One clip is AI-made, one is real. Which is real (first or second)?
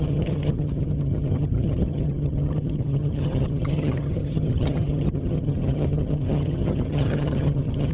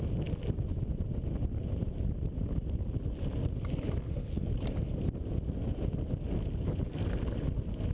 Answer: second